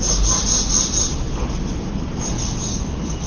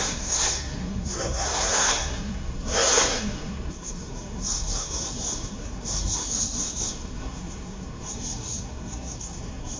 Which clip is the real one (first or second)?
first